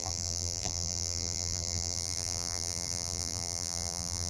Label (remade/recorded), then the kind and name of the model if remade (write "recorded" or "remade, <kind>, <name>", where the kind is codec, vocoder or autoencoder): remade, vocoder, BigVGAN v2